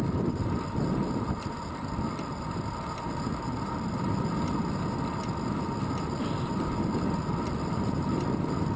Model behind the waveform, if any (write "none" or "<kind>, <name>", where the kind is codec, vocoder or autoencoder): none